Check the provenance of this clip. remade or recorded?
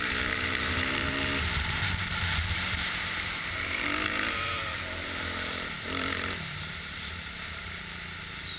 remade